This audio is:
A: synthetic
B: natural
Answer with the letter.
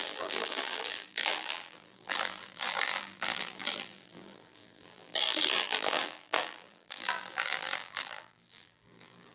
A